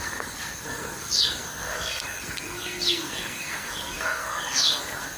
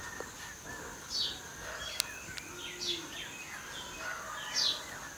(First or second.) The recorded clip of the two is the second